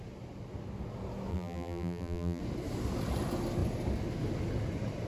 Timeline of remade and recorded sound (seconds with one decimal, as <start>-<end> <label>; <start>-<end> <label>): 0.0-1.3 recorded; 1.3-2.4 remade; 2.4-5.1 recorded

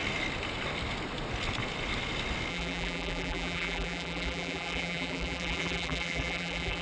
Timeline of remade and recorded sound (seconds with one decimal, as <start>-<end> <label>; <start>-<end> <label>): 0.0-2.5 recorded; 2.5-6.8 remade

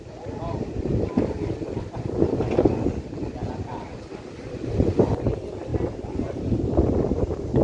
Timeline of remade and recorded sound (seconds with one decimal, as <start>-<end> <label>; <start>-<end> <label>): 0.0-7.6 recorded

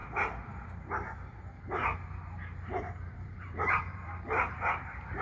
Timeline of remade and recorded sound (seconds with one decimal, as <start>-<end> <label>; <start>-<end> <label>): 0.0-3.1 recorded; 3.1-5.2 remade

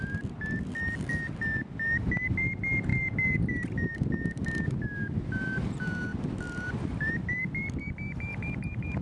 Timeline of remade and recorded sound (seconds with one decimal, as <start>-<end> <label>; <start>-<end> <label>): 0.0-8.3 recorded; 8.3-9.0 remade

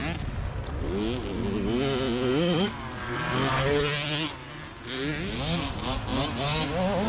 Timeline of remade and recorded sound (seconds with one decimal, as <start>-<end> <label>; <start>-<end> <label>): 0.0-7.1 recorded

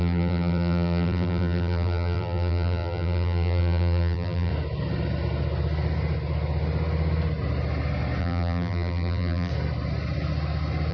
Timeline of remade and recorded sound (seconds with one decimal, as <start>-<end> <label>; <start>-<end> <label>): 0.0-4.5 remade; 4.5-8.2 recorded; 8.2-9.5 remade; 9.5-10.9 recorded